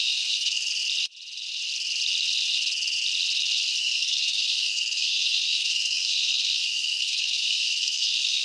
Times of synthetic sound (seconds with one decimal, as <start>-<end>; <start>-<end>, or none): 0.0-0.7; 3.8-8.4